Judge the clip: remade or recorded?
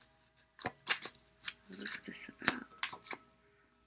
recorded